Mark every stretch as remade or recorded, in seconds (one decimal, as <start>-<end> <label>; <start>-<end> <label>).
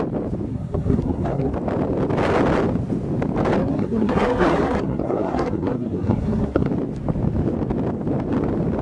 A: 0.0-0.5 recorded; 0.5-1.5 remade; 1.5-3.6 recorded; 3.6-6.7 remade; 6.7-8.8 recorded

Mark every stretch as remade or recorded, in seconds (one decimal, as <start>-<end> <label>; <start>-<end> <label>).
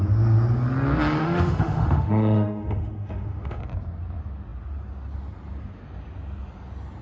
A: 0.0-1.2 recorded; 1.2-3.6 remade; 3.6-7.0 recorded